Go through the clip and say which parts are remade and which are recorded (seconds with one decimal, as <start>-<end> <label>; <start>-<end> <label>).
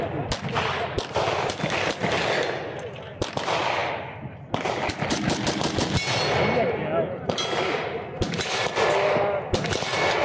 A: 0.0-10.2 recorded